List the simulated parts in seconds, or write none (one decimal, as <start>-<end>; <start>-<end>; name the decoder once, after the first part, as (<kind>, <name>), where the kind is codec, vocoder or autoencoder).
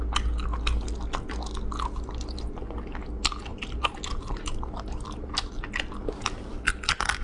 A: 3.5-5.5 (vocoder, BigVGAN v2)